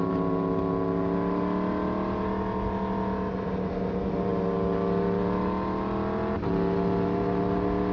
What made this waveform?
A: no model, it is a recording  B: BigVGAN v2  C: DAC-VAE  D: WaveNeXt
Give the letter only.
A